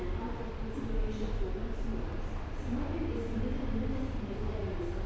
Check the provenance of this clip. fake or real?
real